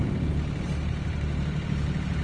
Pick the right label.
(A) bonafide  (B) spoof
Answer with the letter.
B